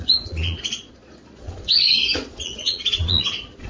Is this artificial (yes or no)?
yes